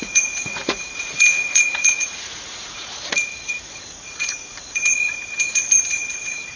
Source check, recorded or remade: remade